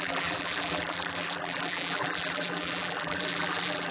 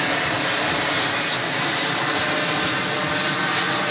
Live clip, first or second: second